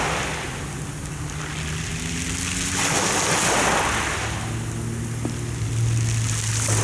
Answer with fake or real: real